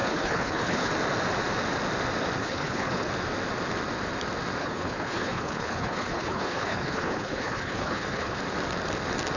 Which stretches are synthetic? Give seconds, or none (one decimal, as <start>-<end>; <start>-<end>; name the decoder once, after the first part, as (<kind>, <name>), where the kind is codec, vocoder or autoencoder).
0.0-0.9 (codec, HILCodec); 2.4-3.1; 4.6-8.4